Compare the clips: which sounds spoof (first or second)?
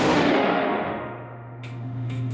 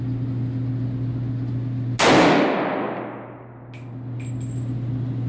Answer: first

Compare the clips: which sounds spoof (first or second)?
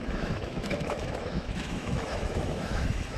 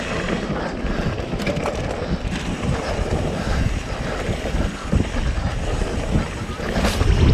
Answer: first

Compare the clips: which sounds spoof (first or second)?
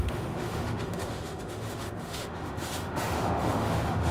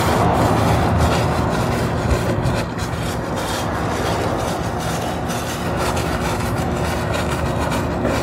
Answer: first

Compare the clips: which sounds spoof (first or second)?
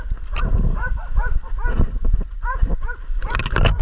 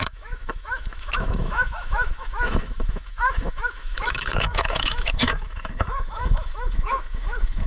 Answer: second